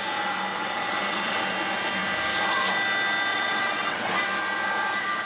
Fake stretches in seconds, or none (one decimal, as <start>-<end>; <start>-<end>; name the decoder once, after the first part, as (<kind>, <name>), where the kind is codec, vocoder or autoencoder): 0.5-1.5 (vocoder, WaveNeXt); 3.3-4.1